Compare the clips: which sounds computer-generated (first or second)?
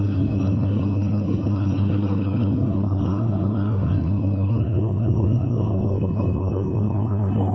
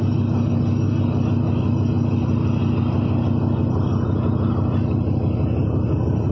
first